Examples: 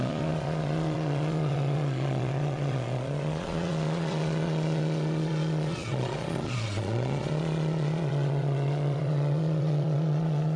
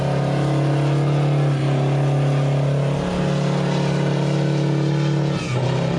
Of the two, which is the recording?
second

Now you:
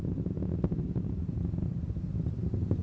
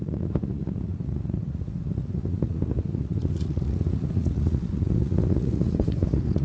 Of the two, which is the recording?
first